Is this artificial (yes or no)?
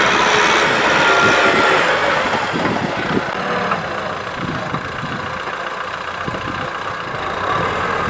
no